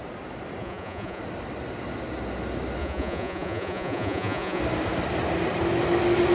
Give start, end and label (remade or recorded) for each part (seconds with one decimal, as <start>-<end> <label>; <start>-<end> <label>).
0.0-0.6 recorded; 0.6-1.2 remade; 1.2-2.8 recorded; 2.8-4.6 remade; 4.6-6.3 recorded